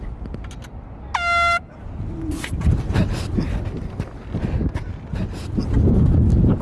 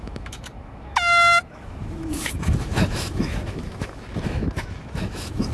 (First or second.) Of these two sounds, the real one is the first